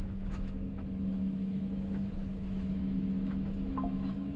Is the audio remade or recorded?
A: remade